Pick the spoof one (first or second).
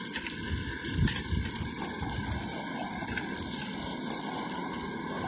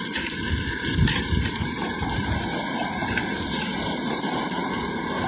second